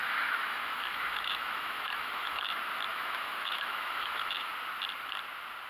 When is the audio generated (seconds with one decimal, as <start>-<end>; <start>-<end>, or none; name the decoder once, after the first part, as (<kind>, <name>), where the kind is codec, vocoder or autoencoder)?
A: 0.0-2.5 (autoencoder, DAC-VAE); 2.9-4.5